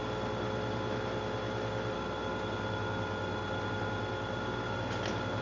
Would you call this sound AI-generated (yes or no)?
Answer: no